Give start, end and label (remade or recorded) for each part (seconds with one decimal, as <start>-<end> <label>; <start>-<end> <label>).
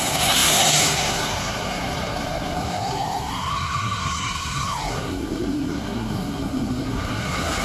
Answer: 0.0-7.6 remade